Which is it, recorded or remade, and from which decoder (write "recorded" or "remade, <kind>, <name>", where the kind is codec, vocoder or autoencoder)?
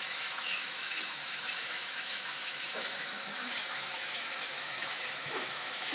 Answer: remade, autoencoder, DAC-VAE